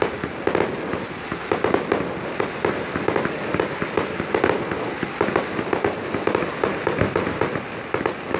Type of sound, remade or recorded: recorded